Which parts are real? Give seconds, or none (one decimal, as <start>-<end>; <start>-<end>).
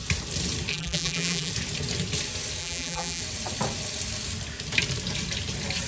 0.0-0.7; 1.5-2.6; 3.2-5.9